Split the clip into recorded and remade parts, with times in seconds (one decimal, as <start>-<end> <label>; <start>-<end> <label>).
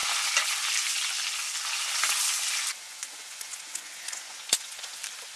0.0-2.7 recorded; 2.7-5.0 remade; 5.0-5.4 recorded